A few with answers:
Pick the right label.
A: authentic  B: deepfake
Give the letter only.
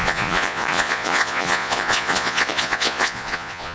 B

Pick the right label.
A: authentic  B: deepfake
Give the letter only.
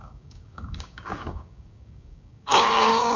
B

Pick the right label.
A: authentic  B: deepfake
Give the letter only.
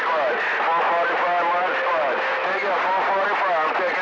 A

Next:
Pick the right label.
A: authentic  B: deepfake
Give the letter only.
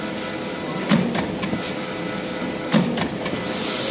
A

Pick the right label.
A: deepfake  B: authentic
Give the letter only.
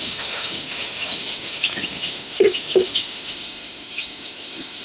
A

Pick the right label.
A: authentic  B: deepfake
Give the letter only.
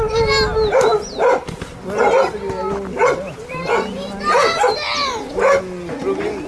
A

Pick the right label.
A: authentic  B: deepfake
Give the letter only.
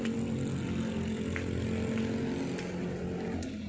A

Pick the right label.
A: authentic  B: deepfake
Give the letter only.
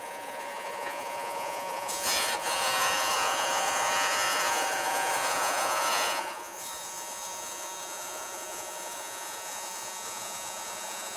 B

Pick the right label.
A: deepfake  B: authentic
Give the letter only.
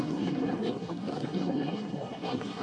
A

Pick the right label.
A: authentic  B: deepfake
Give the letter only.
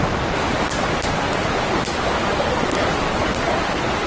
A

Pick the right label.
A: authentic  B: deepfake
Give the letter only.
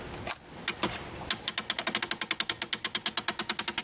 A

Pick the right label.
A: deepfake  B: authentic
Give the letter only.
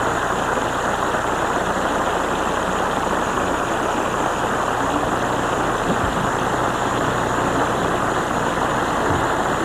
B